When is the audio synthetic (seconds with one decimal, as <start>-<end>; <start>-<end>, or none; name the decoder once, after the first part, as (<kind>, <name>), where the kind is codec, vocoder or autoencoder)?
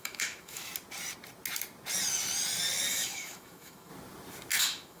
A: 0.0-0.7 (autoencoder, DAC-VAE); 2.9-3.9; 4.6-5.0